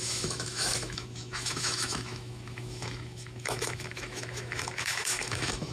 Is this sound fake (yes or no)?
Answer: yes